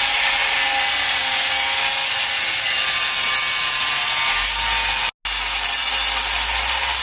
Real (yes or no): yes